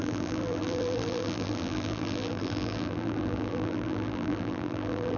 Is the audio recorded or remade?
remade